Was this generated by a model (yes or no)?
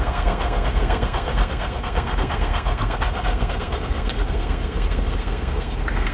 yes